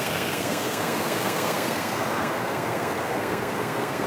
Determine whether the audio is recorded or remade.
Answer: remade